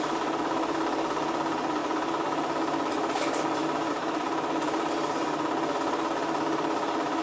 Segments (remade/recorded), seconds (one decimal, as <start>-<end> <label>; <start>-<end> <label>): 0.0-7.2 recorded